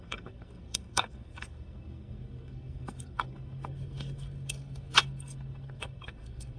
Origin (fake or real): fake